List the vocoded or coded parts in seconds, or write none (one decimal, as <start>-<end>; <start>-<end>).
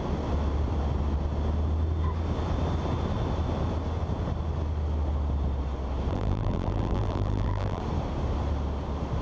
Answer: 6.1-7.8